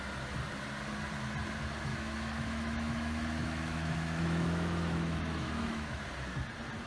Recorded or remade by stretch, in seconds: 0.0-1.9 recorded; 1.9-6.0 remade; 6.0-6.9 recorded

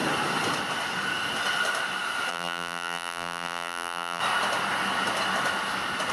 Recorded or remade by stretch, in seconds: 0.0-2.3 recorded; 2.3-4.2 remade; 4.2-6.1 recorded

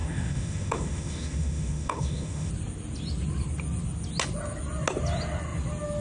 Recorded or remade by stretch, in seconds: 0.0-2.5 remade; 2.5-6.0 recorded

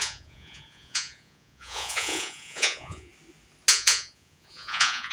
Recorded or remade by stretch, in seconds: 0.0-3.1 remade; 3.1-3.7 recorded; 3.7-5.1 remade

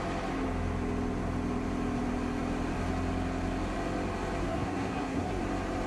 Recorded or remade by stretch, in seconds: 0.0-4.4 recorded; 4.4-5.4 remade; 5.4-5.9 recorded